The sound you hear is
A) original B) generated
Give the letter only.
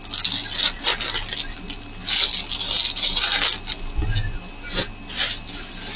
A